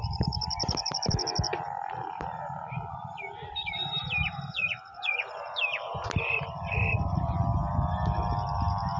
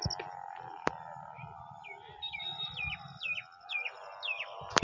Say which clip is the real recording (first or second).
second